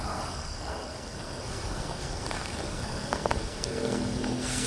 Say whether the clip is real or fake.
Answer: fake